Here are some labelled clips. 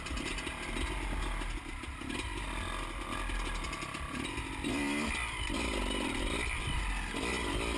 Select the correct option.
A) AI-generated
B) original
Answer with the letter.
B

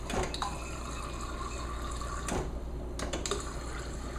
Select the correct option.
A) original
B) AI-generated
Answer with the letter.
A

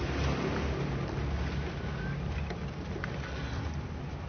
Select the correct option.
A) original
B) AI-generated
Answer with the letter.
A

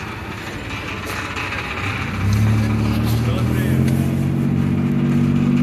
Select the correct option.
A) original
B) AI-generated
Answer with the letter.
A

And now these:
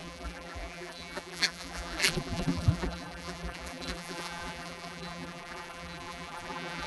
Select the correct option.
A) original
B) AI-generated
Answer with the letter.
B